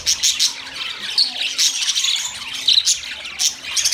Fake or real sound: real